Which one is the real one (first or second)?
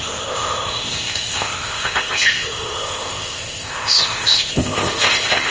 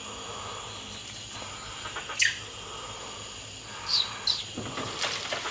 second